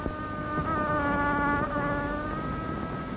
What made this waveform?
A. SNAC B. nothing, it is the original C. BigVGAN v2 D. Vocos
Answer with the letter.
B